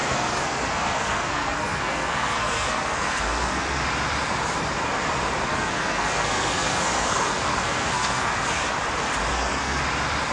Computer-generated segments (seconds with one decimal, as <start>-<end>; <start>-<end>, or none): 0.0-3.8; 5.5-8.6; 9.3-9.8